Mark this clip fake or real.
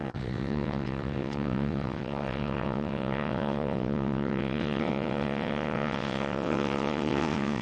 fake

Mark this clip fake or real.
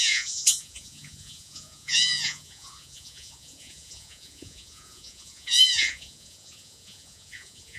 fake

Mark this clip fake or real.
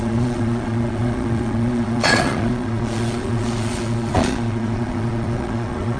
fake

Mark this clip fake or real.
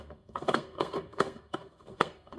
fake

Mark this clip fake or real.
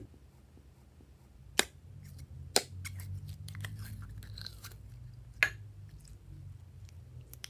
real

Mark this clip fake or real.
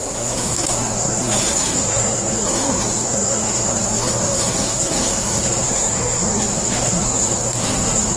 fake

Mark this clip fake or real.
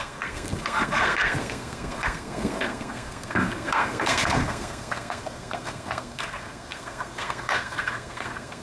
fake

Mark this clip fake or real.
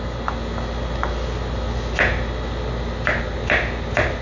real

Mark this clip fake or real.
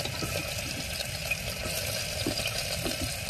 real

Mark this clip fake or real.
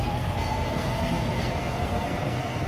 fake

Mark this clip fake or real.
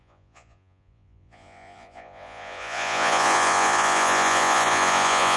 fake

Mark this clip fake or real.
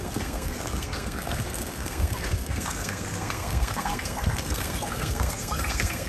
fake